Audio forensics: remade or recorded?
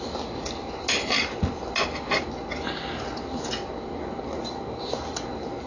recorded